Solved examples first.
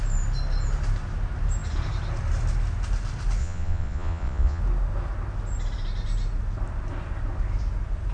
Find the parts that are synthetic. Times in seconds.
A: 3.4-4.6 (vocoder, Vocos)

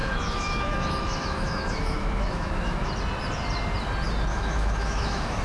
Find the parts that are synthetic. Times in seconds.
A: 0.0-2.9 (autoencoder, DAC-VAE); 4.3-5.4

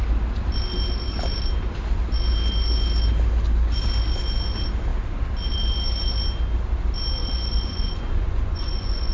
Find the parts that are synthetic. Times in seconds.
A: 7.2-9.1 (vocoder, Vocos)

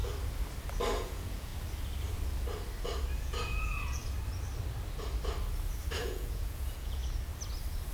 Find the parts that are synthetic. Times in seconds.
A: 1.0-1.5 (vocoder, Vocos); 3.2-4.0; 6.0-7.0

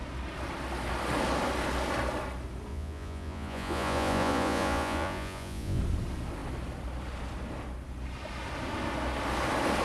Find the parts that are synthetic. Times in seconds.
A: 2.7-5.8 (vocoder, Vocos)

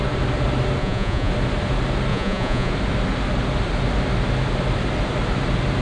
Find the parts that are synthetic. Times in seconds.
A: 0.8-1.3 (vocoder, Vocos); 2.1-2.7

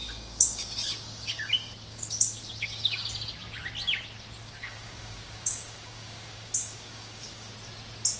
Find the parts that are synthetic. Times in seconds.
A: 0.0-1.5 (codec, DAC); 1.9-3.1; 4.4-7.5